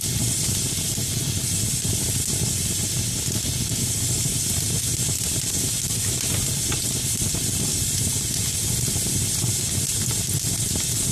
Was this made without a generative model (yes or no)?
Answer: yes